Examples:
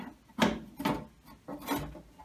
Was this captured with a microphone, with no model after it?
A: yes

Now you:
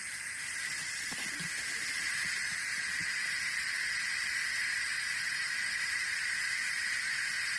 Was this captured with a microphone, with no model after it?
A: yes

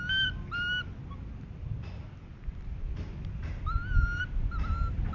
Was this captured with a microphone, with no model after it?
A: yes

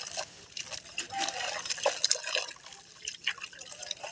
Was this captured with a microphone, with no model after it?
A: yes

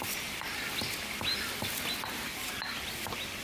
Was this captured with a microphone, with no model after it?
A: yes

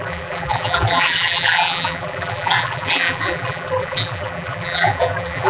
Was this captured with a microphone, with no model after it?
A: no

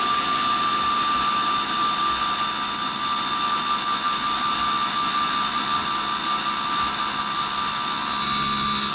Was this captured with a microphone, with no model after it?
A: yes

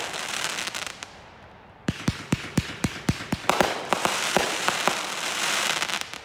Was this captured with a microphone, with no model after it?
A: no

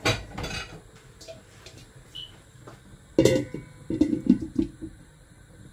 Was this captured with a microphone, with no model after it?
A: yes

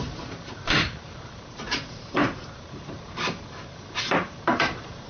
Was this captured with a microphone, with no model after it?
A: no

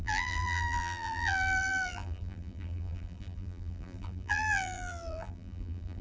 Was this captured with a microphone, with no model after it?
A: no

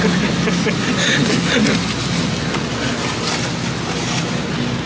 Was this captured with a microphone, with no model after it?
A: yes